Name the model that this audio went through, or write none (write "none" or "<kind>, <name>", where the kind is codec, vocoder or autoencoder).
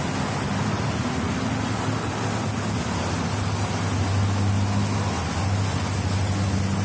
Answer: none